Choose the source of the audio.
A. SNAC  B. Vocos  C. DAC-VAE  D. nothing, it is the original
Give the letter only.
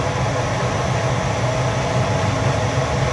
D